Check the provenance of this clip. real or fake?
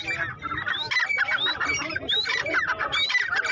real